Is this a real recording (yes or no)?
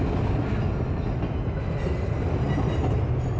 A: yes